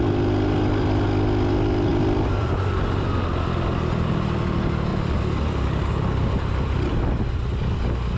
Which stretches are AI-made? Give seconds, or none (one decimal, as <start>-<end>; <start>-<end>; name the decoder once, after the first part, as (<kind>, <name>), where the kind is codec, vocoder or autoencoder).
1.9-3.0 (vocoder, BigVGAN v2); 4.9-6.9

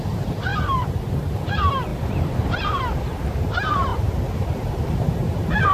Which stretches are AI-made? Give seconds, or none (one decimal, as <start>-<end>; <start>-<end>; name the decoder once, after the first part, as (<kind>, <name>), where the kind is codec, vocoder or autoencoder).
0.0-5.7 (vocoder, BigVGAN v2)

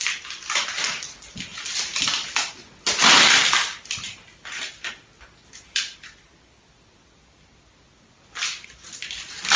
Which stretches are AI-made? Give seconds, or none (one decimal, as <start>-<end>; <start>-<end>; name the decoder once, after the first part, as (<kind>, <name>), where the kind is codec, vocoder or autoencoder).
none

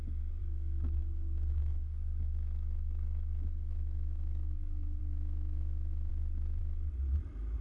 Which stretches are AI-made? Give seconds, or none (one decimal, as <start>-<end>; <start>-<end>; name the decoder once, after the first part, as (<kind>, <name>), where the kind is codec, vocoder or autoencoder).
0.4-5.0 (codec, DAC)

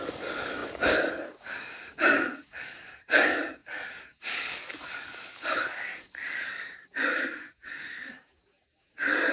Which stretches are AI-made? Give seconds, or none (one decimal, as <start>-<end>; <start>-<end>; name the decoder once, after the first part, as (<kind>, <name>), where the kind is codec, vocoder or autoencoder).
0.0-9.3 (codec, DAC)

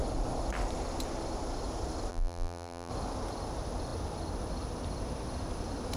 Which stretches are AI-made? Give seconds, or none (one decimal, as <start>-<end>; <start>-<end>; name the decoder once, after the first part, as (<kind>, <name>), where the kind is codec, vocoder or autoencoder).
2.1-2.9 (vocoder, BigVGAN v2)

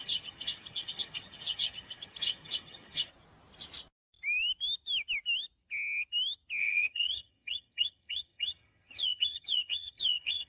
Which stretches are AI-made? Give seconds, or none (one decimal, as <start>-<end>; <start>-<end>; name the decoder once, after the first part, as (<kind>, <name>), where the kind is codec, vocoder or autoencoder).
0.0-3.1 (vocoder, HiFi-GAN); 6.6-10.5

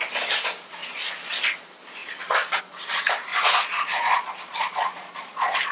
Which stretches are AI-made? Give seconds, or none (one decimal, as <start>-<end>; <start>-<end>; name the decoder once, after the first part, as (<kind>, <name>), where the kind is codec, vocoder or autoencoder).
0.8-1.4 (vocoder, Vocos); 2.0-2.6; 3.3-5.7